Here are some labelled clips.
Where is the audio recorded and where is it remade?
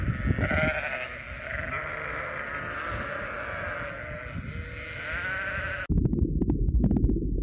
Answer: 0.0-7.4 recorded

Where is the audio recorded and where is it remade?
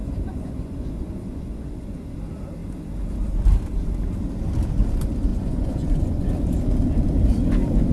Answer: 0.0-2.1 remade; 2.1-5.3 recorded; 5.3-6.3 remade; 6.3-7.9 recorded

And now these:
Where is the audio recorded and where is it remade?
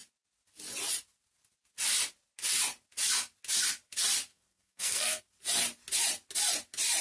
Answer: 0.0-4.3 recorded; 4.3-5.2 remade; 5.2-7.0 recorded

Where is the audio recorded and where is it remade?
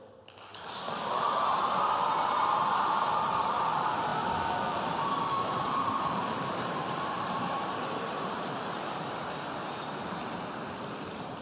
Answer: 0.0-0.5 recorded; 0.5-1.8 remade; 1.8-4.1 recorded; 4.1-9.3 remade; 9.3-11.4 recorded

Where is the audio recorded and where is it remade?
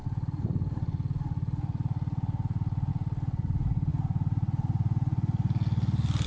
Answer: 0.0-6.3 recorded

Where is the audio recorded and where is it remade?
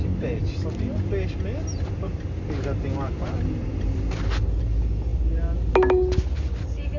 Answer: 0.0-7.0 recorded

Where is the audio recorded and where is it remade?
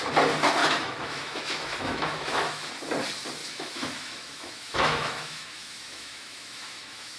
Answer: 0.0-0.6 recorded; 0.6-2.7 remade; 2.7-3.4 recorded; 3.4-7.2 remade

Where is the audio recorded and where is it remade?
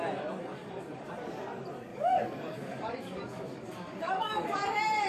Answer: 0.0-0.4 recorded; 0.4-1.1 remade; 1.1-1.9 recorded; 1.9-5.1 remade